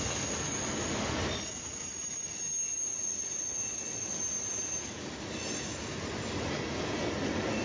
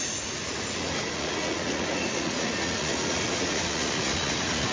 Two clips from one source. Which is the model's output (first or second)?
second